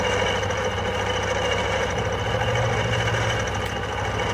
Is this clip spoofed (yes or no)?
no